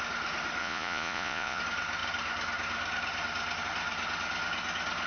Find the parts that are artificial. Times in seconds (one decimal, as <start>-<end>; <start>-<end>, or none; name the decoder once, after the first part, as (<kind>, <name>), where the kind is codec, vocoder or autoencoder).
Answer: 0.6-1.6 (vocoder, Vocos)